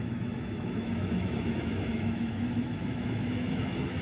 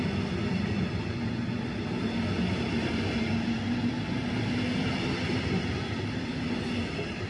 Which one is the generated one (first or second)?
first